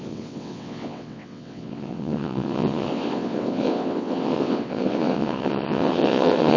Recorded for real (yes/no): no